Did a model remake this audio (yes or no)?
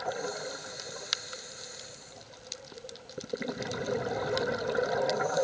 no